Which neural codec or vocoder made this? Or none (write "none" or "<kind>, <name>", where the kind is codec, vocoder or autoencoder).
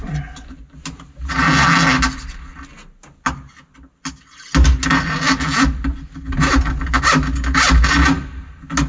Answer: none